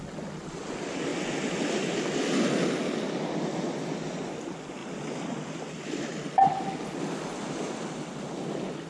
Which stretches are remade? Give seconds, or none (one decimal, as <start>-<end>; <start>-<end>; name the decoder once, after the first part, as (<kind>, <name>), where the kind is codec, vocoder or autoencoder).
none